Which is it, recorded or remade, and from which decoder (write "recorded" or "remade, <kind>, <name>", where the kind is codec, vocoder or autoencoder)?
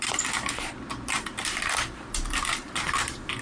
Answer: remade, vocoder, BigVGAN v2